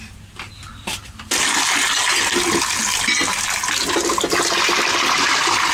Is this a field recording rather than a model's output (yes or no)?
yes